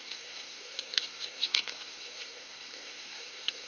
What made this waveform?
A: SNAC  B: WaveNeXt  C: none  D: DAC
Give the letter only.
A